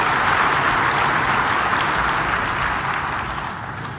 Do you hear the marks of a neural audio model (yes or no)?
no